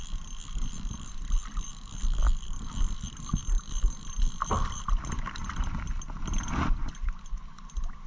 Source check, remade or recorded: recorded